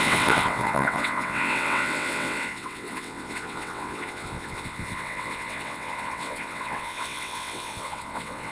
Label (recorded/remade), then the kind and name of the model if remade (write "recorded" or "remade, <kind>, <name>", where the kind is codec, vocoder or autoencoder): remade, vocoder, WaveNeXt